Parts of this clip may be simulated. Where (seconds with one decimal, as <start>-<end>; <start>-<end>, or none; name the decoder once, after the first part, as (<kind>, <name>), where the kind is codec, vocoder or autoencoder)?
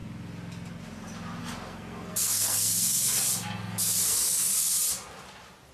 1.4-4.8 (codec, SNAC)